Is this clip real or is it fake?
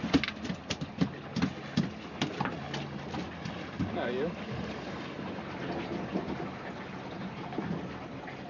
real